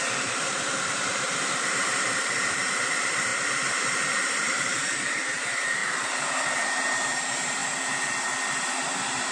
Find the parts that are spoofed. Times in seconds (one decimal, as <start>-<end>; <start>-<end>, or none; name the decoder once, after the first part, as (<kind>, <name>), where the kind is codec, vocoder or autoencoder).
0.0-5.8 (vocoder, BigVGAN v2); 6.3-7.6; 8.6-9.3